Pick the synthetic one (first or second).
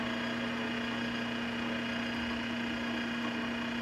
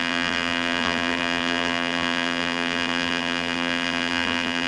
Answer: second